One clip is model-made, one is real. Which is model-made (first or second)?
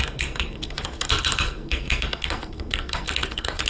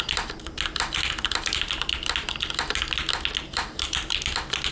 first